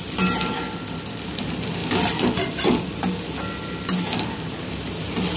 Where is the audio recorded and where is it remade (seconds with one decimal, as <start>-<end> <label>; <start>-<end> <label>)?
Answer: 0.0-5.4 recorded